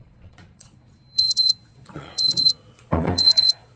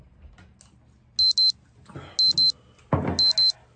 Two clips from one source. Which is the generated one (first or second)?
first